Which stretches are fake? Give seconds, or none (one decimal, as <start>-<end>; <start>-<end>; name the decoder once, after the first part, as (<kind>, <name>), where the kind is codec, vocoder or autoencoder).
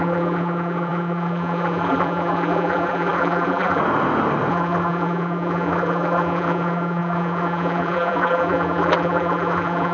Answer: 0.0-3.8 (vocoder, BigVGAN v2); 4.5-9.9